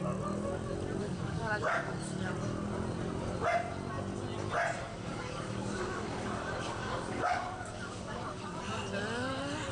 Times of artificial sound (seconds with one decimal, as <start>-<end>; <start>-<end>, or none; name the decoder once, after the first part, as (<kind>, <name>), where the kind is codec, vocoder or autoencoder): 1.0-2.3 (codec, DAC); 4.9-8.6